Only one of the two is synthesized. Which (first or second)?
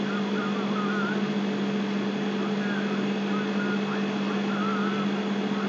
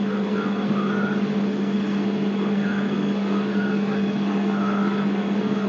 second